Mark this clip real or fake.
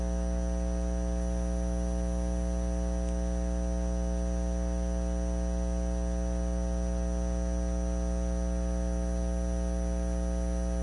real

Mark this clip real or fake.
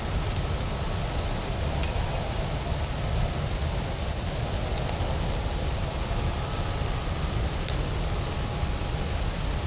real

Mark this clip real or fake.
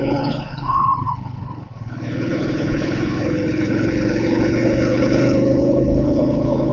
fake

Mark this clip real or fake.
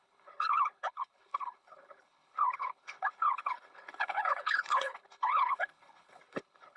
fake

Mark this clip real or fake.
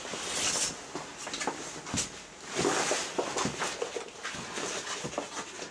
real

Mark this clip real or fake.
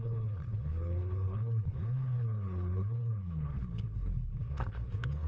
fake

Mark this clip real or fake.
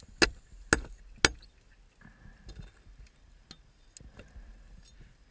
real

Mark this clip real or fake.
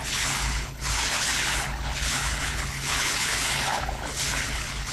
fake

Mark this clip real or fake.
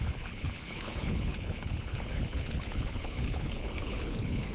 fake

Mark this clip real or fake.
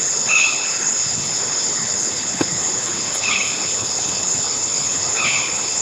fake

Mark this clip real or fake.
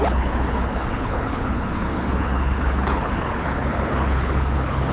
fake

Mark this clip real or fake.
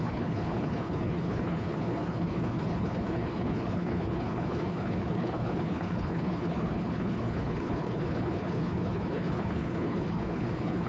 fake